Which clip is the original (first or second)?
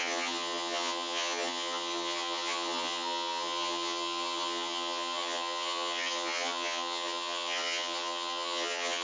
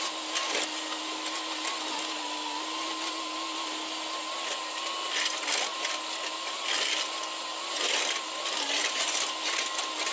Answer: second